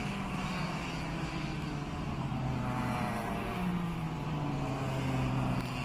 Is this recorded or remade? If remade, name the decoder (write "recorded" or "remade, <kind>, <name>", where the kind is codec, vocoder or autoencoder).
recorded